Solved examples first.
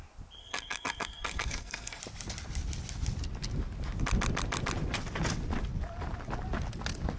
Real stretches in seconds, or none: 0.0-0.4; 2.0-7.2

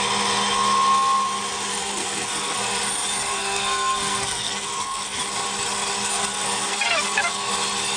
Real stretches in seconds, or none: 0.0-1.7; 2.8-3.3; 5.2-6.1; 7.5-8.0

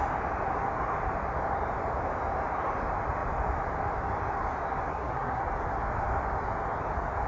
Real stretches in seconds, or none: 0.0-4.9; 5.4-7.3

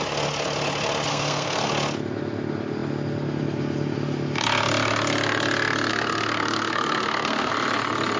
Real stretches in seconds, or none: 0.0-1.1; 1.7-5.9; 7.5-8.2

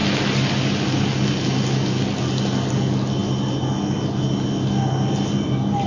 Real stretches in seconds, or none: 0.0-5.9

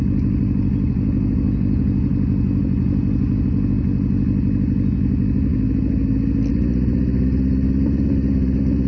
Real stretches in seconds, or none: 0.0-8.9

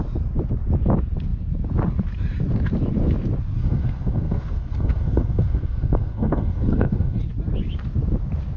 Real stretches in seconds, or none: 0.0-3.6; 7.2-8.6